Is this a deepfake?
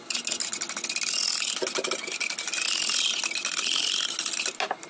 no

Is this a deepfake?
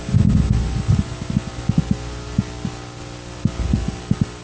no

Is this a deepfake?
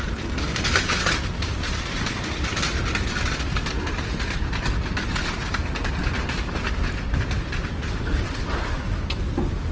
no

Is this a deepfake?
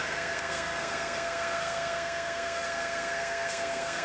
yes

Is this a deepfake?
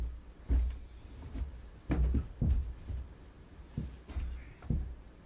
no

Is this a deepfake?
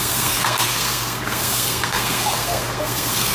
yes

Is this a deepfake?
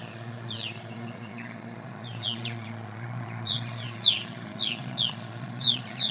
yes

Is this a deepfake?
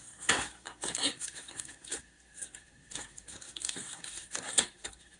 yes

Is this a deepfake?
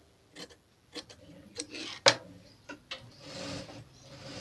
no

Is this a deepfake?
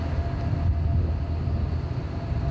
no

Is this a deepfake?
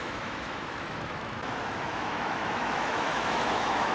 yes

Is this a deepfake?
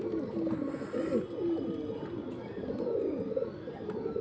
no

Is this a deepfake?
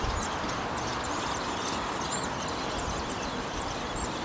no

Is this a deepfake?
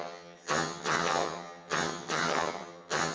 yes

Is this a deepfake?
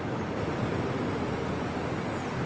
no